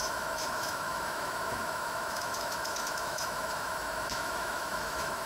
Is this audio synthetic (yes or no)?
yes